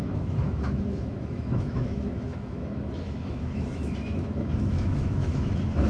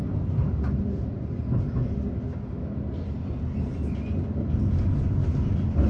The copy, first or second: first